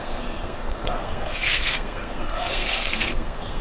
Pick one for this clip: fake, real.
fake